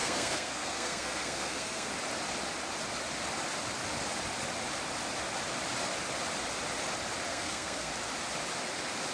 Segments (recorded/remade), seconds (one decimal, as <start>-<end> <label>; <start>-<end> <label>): 0.0-1.9 remade; 1.9-7.3 recorded; 7.3-7.9 remade; 7.9-9.1 recorded